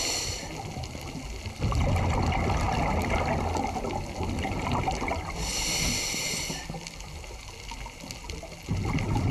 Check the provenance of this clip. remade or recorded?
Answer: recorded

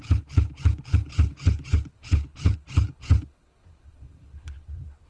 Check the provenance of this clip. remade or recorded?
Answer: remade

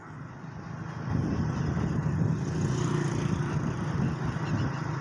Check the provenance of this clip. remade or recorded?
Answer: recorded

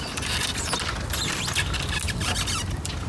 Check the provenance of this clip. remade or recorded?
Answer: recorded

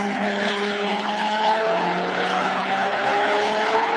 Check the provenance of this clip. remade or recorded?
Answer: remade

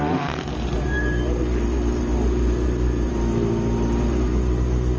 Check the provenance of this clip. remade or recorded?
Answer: remade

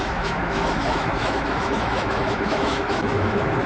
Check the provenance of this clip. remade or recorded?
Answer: remade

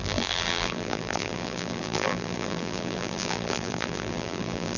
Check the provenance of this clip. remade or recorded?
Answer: remade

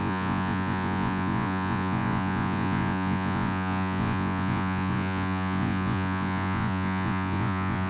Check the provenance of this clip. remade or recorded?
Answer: remade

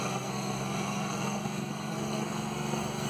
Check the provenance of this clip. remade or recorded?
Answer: remade